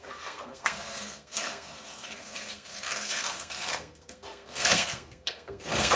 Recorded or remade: remade